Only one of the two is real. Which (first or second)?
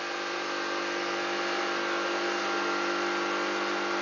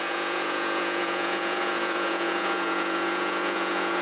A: first